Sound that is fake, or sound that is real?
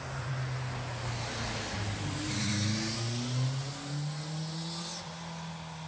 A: real